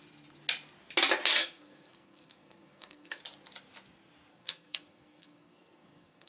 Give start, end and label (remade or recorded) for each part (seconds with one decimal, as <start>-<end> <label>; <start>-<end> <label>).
0.0-1.4 recorded; 1.4-3.2 remade; 3.2-4.3 recorded; 4.3-6.3 remade

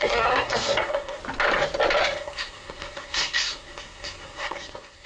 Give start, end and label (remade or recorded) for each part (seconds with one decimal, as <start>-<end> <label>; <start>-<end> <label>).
0.0-1.2 remade; 1.2-2.0 recorded; 2.0-5.1 remade

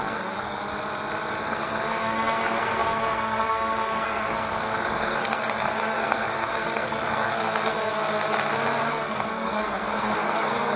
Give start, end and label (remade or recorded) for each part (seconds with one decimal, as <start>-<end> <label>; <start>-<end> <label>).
0.0-0.6 remade; 0.6-1.4 recorded; 1.4-8.0 remade; 8.0-8.9 recorded; 8.9-10.8 remade

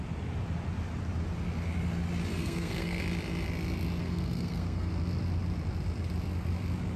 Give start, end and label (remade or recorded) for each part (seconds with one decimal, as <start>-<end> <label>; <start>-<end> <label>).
0.0-2.4 recorded; 2.4-3.0 remade; 3.0-4.0 recorded; 4.0-4.9 remade; 4.9-7.0 recorded